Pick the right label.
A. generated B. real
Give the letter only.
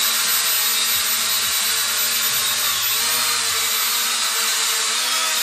B